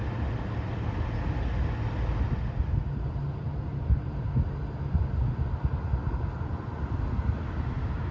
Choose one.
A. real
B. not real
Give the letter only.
A